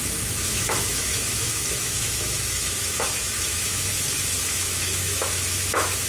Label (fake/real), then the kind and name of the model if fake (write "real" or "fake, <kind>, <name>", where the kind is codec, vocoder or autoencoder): fake, autoencoder, DAC-VAE